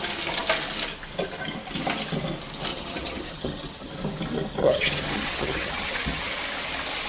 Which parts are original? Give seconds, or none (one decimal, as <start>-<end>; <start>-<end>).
0.0-2.7; 3.9-4.6; 6.3-7.1